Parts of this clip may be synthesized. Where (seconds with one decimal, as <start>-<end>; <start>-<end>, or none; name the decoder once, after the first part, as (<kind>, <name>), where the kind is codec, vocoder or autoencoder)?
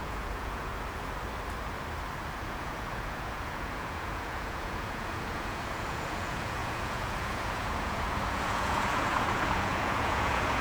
0.0-0.7 (vocoder, Vocos); 2.4-10.6